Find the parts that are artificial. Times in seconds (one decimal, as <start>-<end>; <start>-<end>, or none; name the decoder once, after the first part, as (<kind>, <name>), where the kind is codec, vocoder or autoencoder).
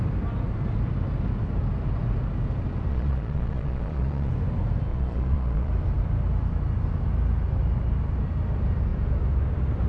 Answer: 2.9-4.3 (vocoder, Vocos); 4.9-5.7